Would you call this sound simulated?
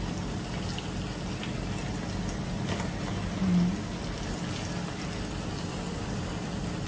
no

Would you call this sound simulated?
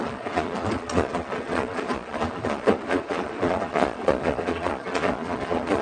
yes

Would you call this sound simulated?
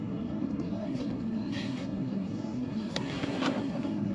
yes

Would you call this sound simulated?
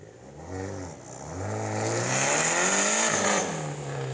no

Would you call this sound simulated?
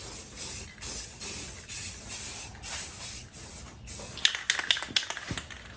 no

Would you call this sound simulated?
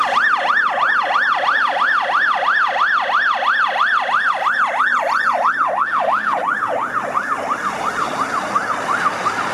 no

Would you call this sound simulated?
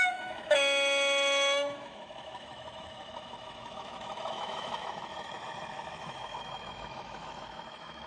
yes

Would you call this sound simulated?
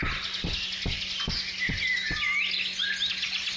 no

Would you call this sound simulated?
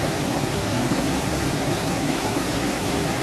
yes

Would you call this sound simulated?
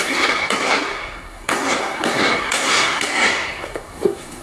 yes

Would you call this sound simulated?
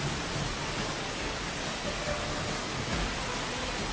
no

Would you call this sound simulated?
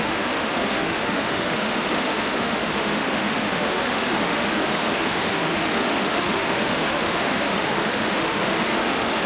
yes